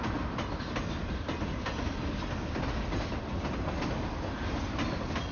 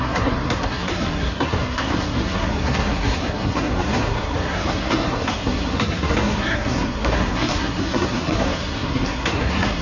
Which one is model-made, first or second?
second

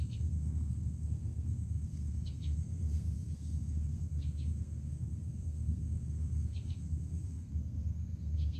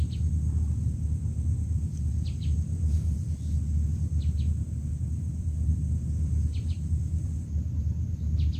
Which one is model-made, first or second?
first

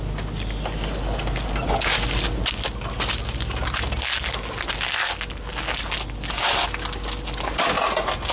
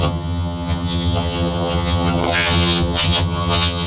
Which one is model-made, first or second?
second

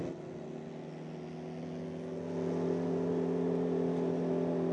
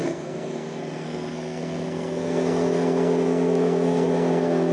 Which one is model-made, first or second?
second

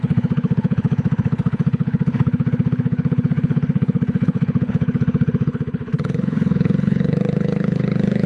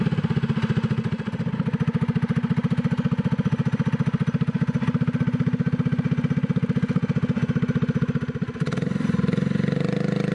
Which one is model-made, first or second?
first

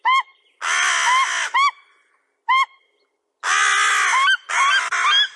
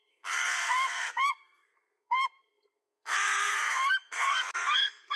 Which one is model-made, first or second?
second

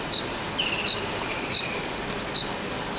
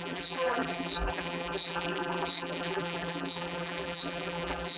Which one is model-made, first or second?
second